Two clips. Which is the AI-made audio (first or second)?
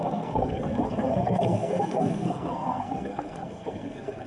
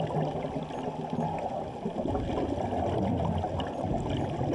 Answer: first